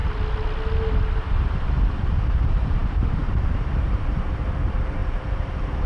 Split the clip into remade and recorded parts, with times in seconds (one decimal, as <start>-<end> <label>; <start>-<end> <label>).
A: 0.0-2.2 recorded; 2.2-5.9 remade